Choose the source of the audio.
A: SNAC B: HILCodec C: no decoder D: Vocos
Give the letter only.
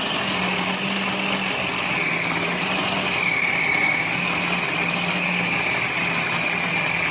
C